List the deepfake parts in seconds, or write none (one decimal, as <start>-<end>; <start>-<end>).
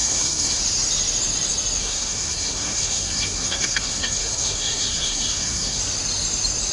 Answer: 0.0-0.6; 1.8-5.8